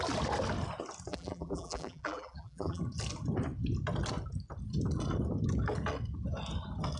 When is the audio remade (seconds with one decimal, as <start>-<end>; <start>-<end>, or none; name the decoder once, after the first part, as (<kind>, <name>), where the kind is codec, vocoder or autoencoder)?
1.1-2.8 (vocoder, BigVGAN v2)